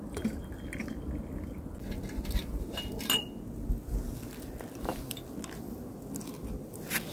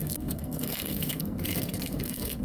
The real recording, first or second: first